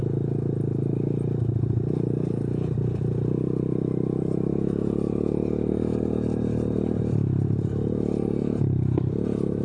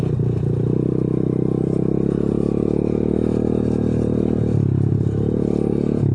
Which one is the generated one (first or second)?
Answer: first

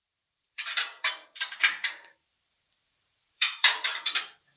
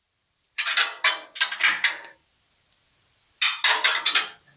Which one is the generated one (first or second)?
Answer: first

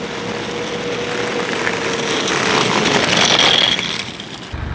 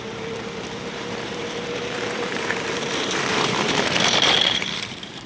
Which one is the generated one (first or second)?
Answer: second